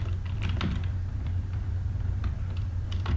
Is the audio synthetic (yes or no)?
yes